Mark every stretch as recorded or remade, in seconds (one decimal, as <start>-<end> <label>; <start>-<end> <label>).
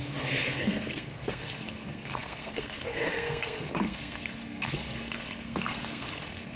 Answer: 0.0-6.6 remade